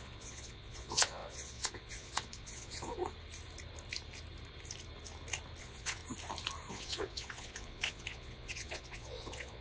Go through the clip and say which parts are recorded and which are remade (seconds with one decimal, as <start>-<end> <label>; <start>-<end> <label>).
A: 0.0-3.0 remade; 3.0-5.6 recorded; 5.6-6.0 remade; 6.0-6.7 recorded; 6.7-9.6 remade